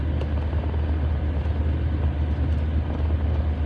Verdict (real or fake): real